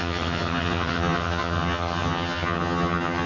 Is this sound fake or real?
fake